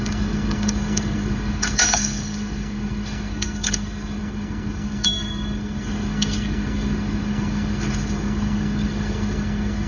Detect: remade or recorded remade